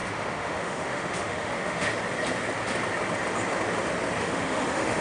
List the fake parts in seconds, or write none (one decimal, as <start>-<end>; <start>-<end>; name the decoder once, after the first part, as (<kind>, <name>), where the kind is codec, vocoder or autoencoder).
0.0-1.9 (autoencoder, DAC-VAE); 4.2-5.0

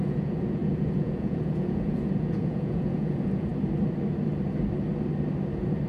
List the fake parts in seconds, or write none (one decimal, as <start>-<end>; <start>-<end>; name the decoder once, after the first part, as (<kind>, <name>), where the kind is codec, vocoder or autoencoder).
0.0-3.5 (vocoder, Vocos)

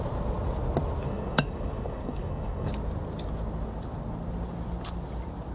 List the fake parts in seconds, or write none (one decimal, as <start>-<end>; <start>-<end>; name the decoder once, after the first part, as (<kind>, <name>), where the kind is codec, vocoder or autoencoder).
1.0-2.7 (codec, DAC)

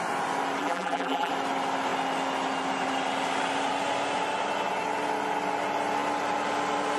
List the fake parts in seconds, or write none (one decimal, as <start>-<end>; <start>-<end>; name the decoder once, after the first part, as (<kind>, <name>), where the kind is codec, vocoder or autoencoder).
0.6-1.3 (vocoder, BigVGAN v2)

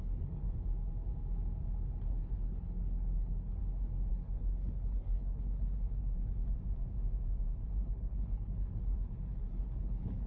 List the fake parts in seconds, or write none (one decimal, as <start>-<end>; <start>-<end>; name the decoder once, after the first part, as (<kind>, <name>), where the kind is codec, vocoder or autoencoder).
0.0-0.4 (codec, HILCodec); 2.0-3.6; 4.1-6.4; 7.6-10.3